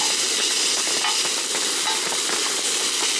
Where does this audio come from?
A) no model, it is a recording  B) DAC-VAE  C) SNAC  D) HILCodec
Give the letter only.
A